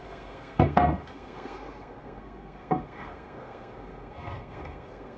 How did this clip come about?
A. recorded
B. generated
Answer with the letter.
B